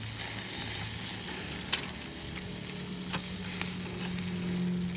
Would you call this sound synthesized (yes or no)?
no